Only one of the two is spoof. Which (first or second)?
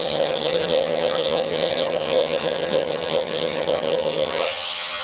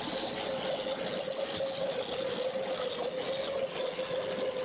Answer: first